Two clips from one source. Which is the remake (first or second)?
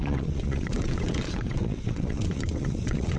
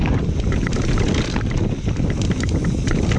first